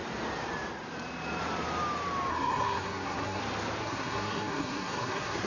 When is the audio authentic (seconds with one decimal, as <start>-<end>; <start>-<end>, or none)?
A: 0.0-2.3; 3.4-3.8